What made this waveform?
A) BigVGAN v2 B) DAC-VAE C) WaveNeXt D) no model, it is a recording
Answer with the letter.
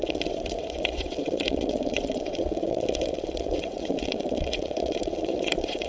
C